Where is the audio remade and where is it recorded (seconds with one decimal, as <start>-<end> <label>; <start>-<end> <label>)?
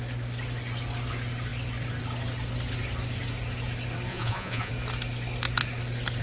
0.0-4.1 recorded; 4.1-4.7 remade; 4.7-6.2 recorded